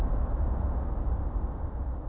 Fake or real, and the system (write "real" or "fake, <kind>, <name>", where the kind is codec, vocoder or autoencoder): real